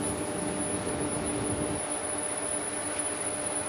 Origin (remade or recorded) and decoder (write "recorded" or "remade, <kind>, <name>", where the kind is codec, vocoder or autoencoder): recorded